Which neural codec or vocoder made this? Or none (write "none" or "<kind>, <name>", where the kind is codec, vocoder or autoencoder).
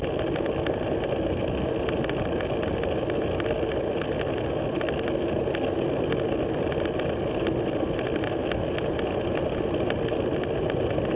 none